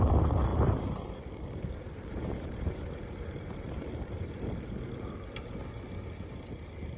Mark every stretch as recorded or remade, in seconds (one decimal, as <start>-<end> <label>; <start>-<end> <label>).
0.0-0.5 recorded; 0.5-4.7 remade; 4.7-7.0 recorded

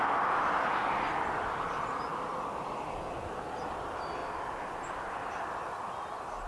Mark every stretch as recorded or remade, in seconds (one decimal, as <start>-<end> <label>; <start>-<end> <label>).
0.0-4.2 recorded; 4.2-5.1 remade; 5.1-6.5 recorded

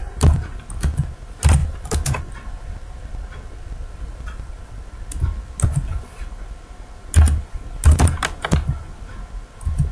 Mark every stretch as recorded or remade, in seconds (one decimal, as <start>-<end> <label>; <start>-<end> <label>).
0.0-9.9 recorded

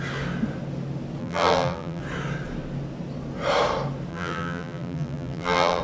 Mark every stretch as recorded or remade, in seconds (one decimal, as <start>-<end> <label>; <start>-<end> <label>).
0.0-1.2 recorded; 1.2-2.0 remade; 2.0-4.1 recorded; 4.1-5.8 remade